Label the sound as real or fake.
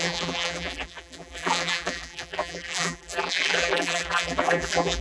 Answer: fake